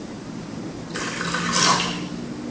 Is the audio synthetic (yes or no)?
no